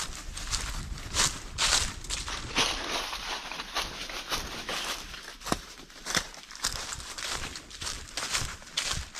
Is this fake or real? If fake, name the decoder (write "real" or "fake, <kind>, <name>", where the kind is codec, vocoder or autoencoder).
real